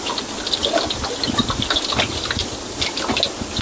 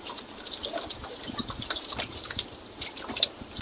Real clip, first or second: first